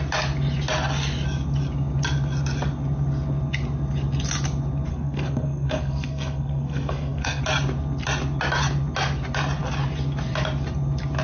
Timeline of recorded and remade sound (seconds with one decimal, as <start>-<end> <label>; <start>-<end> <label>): 0.0-4.9 recorded; 4.9-7.4 remade; 7.4-11.2 recorded